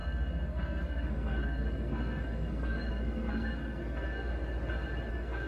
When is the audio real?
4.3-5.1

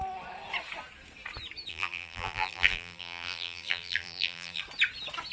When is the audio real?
0.0-1.7; 4.6-5.3